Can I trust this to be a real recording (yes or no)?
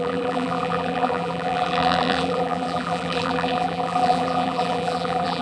no